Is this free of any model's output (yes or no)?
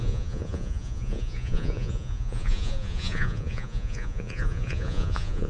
no